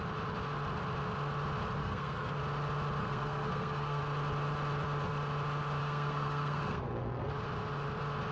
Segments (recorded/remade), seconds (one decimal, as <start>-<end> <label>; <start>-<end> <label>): 0.0-1.8 recorded; 1.8-2.4 remade; 2.4-3.0 recorded; 3.0-4.0 remade; 4.0-5.8 recorded; 5.8-7.3 remade; 7.3-8.3 recorded